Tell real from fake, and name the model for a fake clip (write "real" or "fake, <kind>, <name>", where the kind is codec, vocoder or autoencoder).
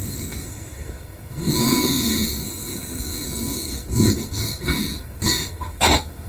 fake, codec, SNAC